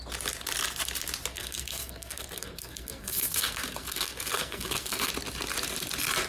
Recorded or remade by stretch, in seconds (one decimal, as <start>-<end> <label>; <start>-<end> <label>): 0.0-1.3 recorded; 1.3-5.1 remade; 5.1-6.3 recorded